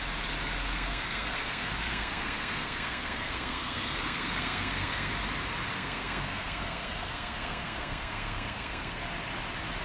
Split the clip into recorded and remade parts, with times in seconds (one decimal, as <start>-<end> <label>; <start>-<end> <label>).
0.0-0.7 recorded; 0.7-5.1 remade; 5.1-5.7 recorded; 5.7-9.0 remade; 9.0-9.8 recorded